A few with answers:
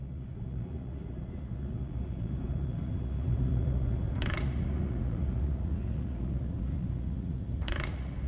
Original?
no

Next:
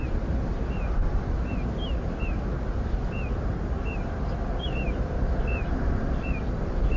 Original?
yes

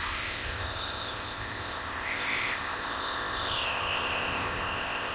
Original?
no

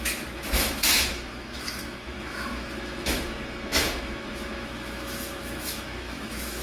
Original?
no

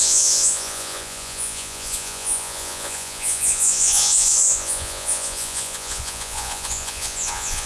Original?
no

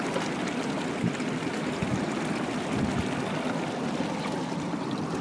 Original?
yes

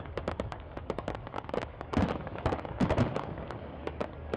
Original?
no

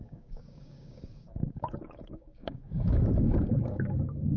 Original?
no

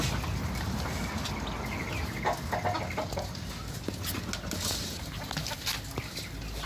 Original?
yes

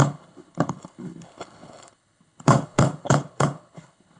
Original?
no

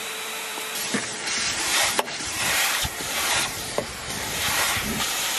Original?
no